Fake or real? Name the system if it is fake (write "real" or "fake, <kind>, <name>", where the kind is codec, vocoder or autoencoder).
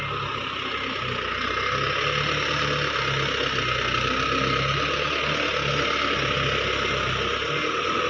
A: real